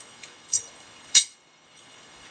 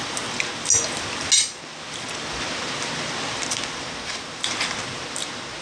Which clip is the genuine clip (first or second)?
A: second